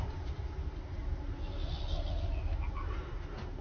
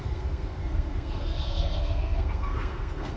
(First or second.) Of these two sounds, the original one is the first